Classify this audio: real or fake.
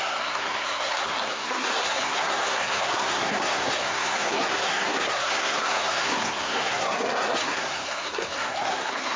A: fake